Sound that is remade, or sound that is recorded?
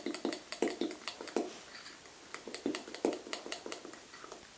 recorded